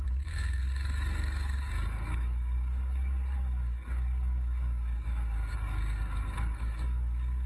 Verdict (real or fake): fake